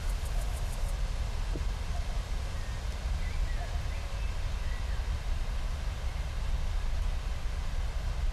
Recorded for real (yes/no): yes